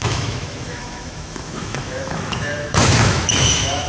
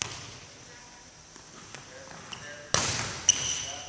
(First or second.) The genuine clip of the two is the second